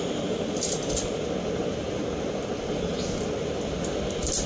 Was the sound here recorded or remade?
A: recorded